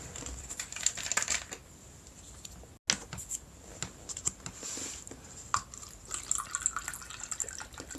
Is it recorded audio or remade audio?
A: recorded